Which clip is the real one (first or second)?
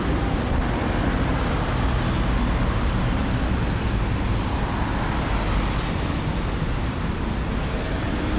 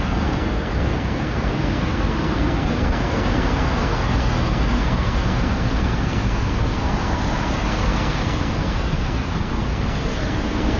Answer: first